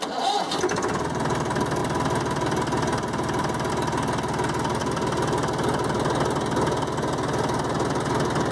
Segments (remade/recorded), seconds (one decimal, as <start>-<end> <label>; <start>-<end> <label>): 0.0-1.8 recorded; 1.8-3.7 remade; 3.7-4.8 recorded; 4.8-8.1 remade; 8.1-8.5 recorded